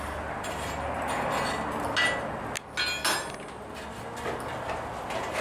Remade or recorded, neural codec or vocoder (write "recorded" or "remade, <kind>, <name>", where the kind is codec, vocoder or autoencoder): recorded